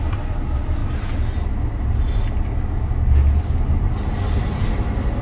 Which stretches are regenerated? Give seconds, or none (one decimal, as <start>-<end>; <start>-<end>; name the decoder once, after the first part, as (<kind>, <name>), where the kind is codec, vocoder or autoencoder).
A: none